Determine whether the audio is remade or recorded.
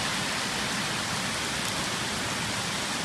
recorded